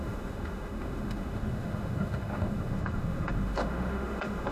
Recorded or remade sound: remade